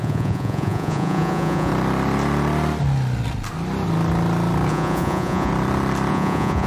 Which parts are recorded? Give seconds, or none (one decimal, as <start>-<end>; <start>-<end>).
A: 1.7-4.7; 5.5-6.1